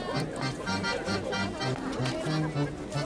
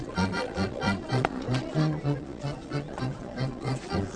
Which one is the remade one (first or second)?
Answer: second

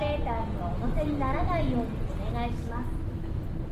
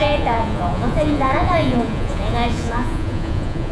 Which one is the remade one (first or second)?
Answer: second